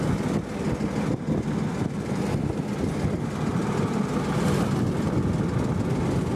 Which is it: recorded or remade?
recorded